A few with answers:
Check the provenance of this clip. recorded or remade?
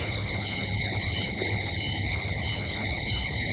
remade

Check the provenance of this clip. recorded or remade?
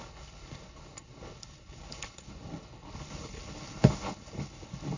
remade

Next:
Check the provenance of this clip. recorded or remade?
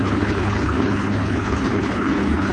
remade